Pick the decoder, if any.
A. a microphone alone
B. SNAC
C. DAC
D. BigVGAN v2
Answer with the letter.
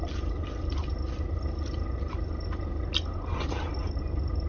A